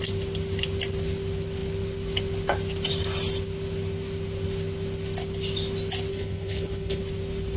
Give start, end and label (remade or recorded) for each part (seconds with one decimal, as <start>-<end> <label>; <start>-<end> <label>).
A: 0.0-6.1 recorded; 6.1-7.0 remade; 7.0-7.6 recorded